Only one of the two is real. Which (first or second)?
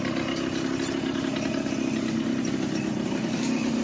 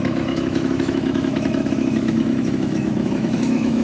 first